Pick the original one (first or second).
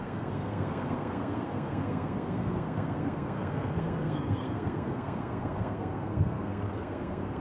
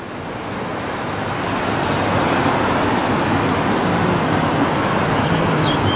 second